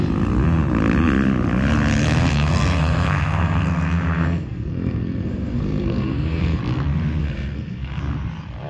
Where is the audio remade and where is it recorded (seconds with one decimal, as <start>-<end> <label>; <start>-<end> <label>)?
0.0-2.0 recorded; 2.0-6.6 remade; 6.6-7.2 recorded; 7.2-8.0 remade; 8.0-8.7 recorded